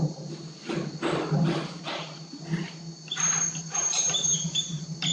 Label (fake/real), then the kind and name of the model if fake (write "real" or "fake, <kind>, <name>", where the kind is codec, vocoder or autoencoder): real